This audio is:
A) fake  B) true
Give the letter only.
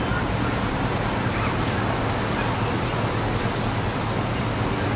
B